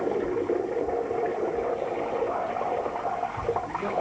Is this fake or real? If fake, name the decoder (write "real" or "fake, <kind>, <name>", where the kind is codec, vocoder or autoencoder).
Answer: real